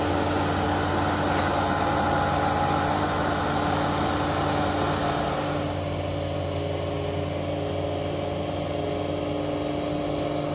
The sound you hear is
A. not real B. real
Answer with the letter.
B